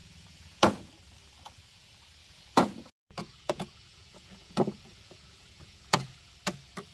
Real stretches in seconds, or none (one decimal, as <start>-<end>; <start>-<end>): 0.9-2.2; 6.3-6.9